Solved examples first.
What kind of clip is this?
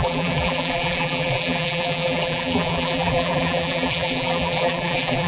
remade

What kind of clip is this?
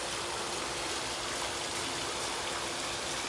recorded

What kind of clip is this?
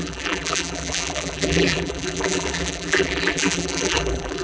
remade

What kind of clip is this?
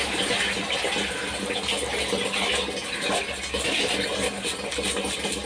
recorded